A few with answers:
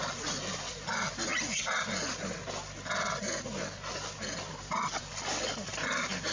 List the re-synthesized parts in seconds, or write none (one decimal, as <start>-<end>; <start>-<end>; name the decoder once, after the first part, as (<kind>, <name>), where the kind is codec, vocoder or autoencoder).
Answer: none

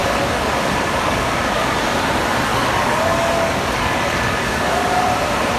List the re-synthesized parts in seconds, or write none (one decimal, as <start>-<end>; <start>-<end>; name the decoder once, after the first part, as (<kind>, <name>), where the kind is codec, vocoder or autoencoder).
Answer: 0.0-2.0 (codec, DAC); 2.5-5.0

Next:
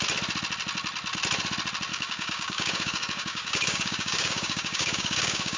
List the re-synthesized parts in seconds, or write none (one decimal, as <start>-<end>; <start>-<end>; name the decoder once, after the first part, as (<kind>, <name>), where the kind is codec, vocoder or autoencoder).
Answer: 1.9-5.6 (codec, DAC)

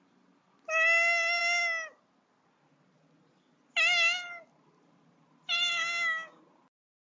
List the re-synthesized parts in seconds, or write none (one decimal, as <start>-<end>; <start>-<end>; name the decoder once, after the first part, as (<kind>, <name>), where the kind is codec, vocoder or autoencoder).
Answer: 5.8-6.4 (codec, DAC)

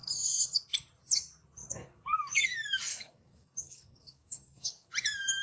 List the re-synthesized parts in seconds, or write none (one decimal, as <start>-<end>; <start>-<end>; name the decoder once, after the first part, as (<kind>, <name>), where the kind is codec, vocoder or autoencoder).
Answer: 1.6-2.4 (codec, DAC); 2.9-4.9

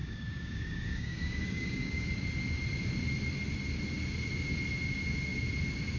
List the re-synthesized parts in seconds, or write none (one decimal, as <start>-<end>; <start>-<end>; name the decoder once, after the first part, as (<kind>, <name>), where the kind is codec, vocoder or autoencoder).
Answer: 0.0-2.1 (codec, DAC)

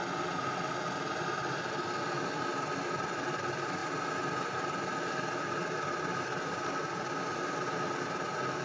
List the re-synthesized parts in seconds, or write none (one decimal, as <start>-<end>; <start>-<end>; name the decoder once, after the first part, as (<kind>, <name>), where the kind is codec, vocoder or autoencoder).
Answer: none

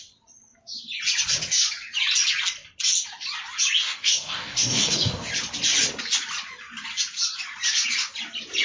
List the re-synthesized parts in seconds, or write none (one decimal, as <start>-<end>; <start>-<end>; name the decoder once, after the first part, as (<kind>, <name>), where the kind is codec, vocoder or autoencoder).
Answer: 3.8-5.3 (codec, DAC)